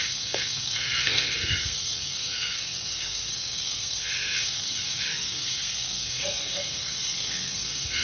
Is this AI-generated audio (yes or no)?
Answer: yes